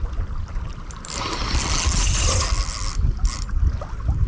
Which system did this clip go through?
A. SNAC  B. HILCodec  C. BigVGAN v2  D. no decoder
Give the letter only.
D